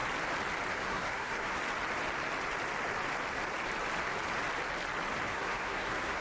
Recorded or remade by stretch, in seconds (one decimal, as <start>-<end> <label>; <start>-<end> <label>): 0.0-0.7 recorded; 0.7-1.6 remade; 1.6-5.3 recorded; 5.3-6.2 remade